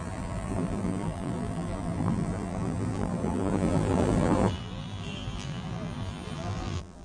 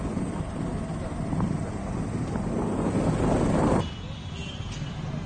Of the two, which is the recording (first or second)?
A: second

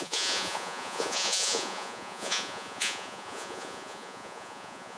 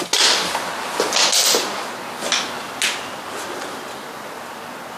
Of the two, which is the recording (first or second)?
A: second